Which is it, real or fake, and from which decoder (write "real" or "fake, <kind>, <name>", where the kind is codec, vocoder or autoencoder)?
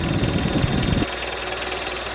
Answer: real